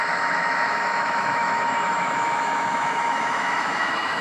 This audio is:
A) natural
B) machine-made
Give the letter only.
B